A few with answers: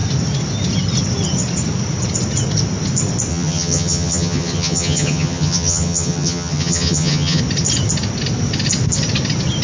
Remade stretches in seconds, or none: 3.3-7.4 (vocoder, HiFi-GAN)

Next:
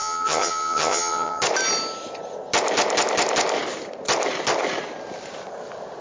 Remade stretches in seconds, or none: 0.0-1.4 (vocoder, HiFi-GAN)

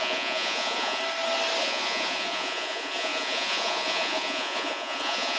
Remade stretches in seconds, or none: 0.0-1.0 (vocoder, Vocos); 1.6-5.4

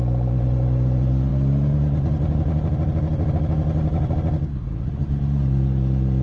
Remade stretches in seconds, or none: none

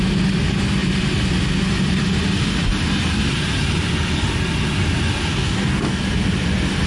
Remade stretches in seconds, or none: 5.3-6.0 (codec, DAC)

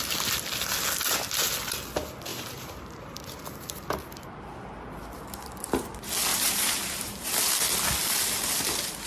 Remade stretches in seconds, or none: 2.3-3.4 (vocoder, BigVGAN v2); 6.3-7.3

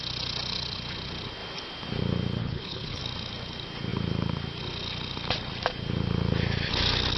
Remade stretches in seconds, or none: 2.4-3.0 (codec, HILCodec)